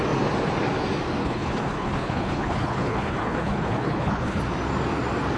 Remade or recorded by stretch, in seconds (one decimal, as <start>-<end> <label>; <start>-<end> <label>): 0.0-1.2 recorded; 1.2-4.4 remade; 4.4-5.4 recorded